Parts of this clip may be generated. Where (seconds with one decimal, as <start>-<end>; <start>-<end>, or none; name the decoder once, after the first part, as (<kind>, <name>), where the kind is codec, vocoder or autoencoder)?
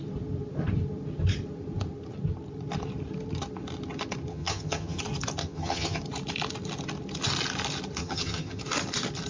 4.3-5.0 (vocoder, HiFi-GAN); 5.4-6.0; 8.0-8.6